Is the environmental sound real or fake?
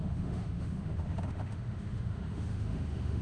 fake